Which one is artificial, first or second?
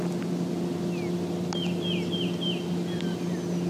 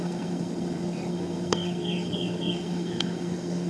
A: second